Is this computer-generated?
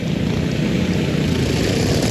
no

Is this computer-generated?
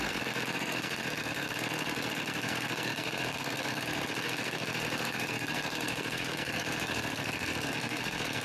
yes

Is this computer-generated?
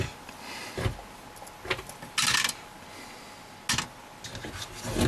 no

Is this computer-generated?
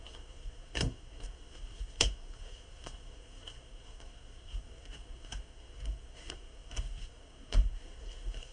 yes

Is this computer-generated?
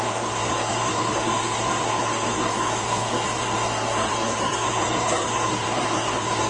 yes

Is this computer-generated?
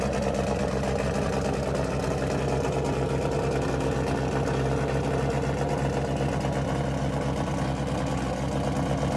no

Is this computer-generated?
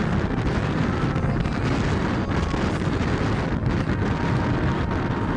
no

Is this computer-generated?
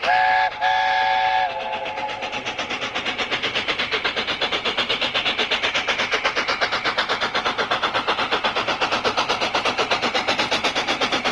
no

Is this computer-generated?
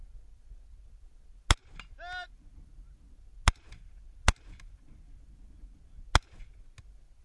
no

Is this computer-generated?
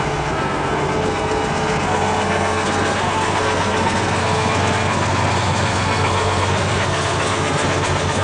yes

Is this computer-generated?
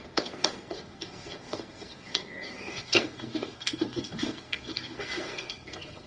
yes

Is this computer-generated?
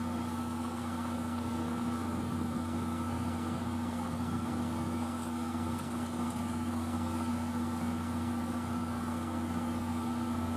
yes